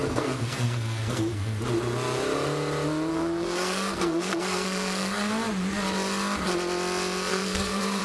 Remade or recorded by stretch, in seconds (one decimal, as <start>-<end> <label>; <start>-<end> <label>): 0.0-1.6 remade; 1.6-3.1 recorded; 3.1-5.3 remade; 5.3-7.3 recorded; 7.3-8.0 remade